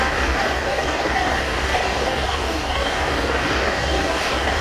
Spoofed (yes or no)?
yes